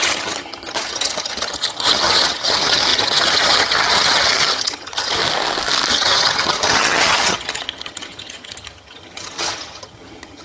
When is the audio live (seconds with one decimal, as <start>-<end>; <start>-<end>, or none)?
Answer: 5.2-5.9